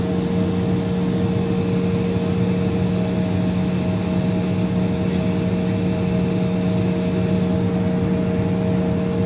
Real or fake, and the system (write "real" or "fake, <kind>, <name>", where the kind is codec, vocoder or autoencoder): real